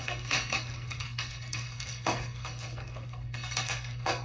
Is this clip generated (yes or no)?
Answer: yes